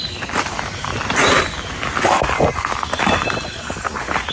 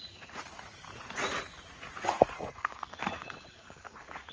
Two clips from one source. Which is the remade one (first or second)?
second